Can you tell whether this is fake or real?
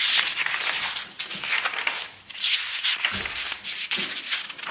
real